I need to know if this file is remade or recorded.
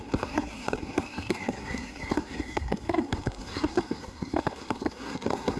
remade